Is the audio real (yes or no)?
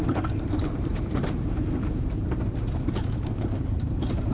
no